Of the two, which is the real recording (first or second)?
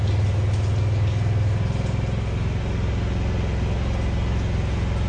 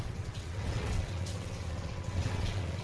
first